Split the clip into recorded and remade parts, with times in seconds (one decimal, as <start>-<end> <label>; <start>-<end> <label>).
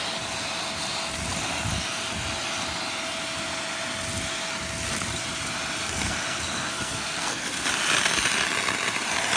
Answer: 0.0-5.8 recorded; 5.8-7.7 remade; 7.7-9.4 recorded